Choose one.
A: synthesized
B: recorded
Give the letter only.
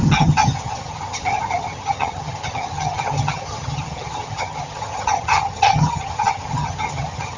A